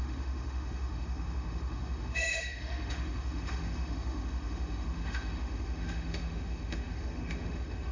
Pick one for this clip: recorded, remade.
remade